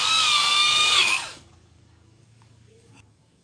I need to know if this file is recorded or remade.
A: remade